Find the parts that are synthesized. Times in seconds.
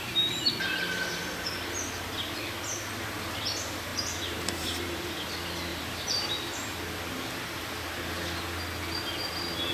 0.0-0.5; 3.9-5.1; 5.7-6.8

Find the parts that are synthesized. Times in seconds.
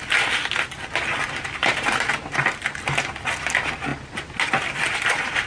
none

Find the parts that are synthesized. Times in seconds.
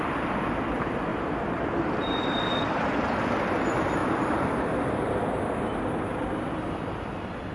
1.1-3.6; 4.0-5.3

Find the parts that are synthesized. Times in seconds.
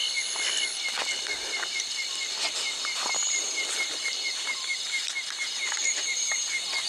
2.5-6.9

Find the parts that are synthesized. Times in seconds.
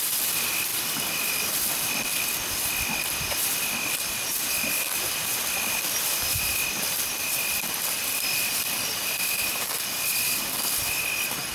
none